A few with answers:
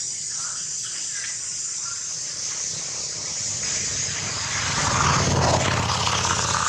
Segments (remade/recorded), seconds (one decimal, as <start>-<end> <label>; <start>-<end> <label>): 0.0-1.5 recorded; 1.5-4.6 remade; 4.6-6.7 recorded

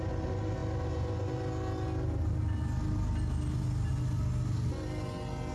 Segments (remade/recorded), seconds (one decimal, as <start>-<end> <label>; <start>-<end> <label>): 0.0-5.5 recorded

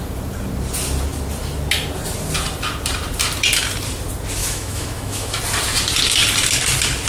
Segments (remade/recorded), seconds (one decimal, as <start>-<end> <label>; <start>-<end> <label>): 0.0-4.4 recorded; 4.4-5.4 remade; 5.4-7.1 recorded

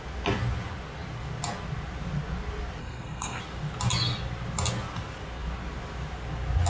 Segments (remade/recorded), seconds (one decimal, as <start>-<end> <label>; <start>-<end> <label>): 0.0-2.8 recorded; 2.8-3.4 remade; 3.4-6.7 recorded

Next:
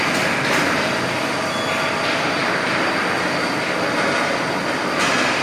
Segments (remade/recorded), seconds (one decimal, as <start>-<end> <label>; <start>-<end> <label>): 0.0-5.4 recorded

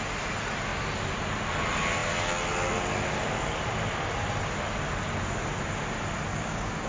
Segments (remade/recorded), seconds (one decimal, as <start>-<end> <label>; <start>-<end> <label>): 0.0-6.3 recorded; 6.3-6.9 remade

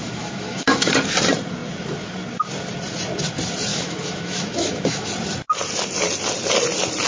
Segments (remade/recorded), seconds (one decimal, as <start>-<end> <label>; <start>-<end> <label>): 0.0-0.9 remade; 0.9-3.7 recorded; 3.7-5.1 remade; 5.1-7.1 recorded

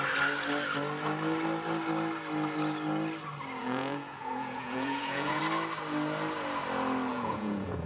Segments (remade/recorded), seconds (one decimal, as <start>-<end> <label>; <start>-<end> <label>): 0.0-3.6 recorded; 3.6-5.4 remade; 5.4-7.1 recorded; 7.1-7.9 remade